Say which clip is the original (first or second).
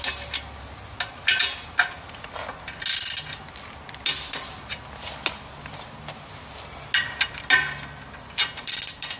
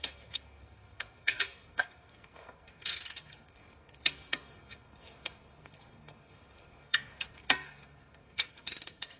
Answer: first